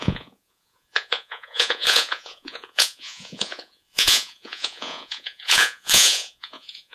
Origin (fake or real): fake